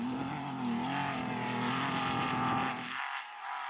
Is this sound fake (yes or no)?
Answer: no